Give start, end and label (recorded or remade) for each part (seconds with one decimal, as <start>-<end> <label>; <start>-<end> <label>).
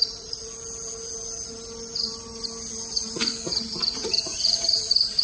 0.0-0.4 remade; 0.4-3.5 recorded; 3.5-5.2 remade